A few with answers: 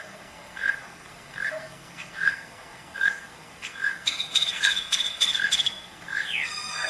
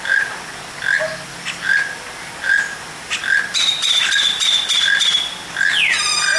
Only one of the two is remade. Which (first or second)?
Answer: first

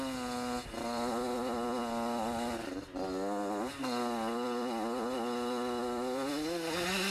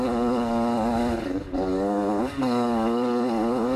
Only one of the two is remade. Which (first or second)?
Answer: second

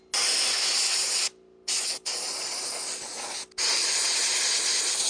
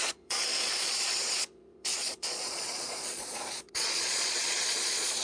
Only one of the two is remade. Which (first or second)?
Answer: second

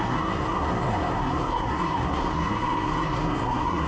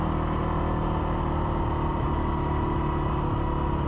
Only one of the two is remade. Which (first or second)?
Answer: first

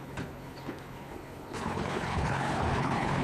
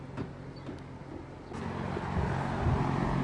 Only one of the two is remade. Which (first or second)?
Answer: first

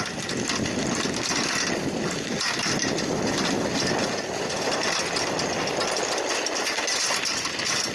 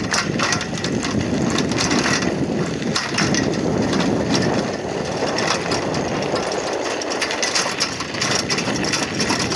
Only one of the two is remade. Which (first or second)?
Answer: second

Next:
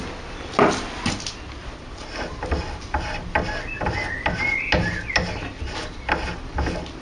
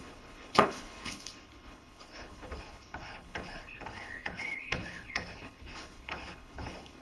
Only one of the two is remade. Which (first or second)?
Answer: second